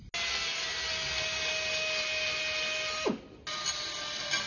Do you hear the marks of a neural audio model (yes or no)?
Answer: no